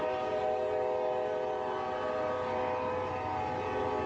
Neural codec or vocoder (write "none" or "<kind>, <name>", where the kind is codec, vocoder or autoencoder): none